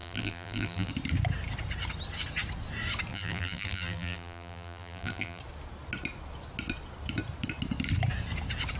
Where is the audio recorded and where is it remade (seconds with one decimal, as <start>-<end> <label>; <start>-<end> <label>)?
0.0-0.9 remade; 0.9-3.1 recorded; 3.1-5.4 remade; 5.4-8.8 recorded